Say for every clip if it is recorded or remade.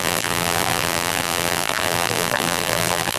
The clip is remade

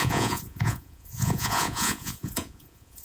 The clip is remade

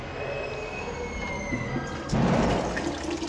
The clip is recorded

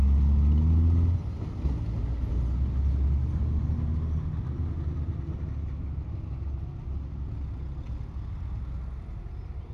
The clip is recorded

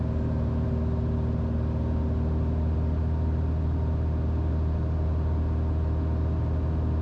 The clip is recorded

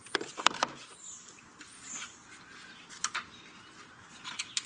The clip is recorded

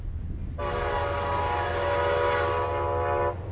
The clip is recorded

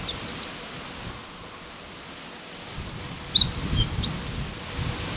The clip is recorded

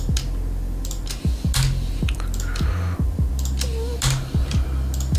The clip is recorded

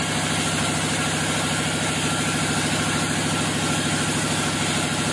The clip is recorded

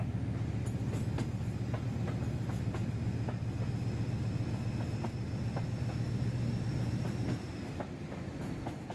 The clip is recorded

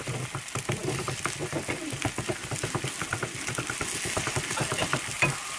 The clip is recorded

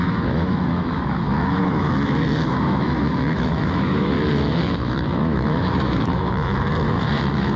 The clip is remade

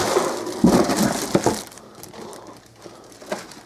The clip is recorded